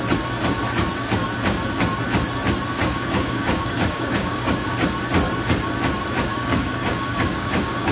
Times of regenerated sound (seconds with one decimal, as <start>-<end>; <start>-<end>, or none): 2.8-4.5; 6.3-7.9

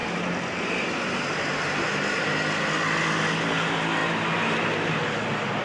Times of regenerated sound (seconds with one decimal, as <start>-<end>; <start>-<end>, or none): none

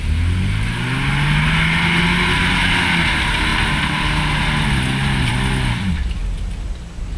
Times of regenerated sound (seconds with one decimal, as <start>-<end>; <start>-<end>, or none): none